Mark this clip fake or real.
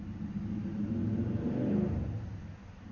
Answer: real